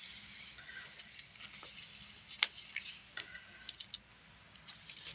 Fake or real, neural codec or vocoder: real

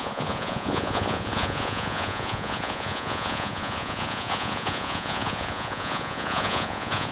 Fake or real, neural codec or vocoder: fake, vocoder, Vocos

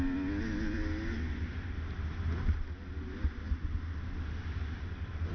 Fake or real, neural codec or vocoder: real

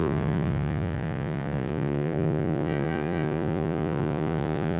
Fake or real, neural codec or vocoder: fake, vocoder, Vocos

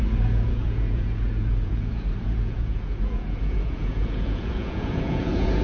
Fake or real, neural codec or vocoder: fake, vocoder, Vocos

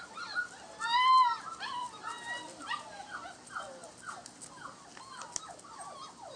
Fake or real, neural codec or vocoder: real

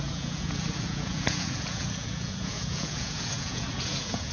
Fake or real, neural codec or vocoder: fake, vocoder, Vocos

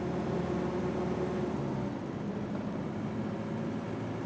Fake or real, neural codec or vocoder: real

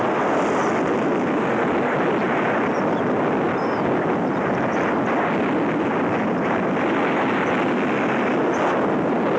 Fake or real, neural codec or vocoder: real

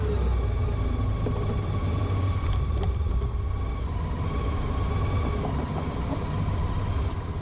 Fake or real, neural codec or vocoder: real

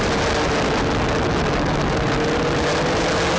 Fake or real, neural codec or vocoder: real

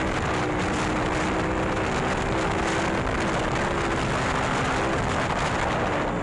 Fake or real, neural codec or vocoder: real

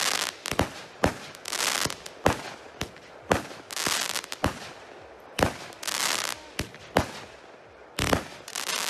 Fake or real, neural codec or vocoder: real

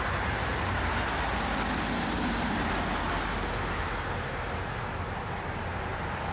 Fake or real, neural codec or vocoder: real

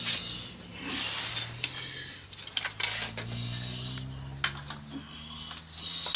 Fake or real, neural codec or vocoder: real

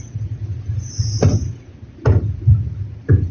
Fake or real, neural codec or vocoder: real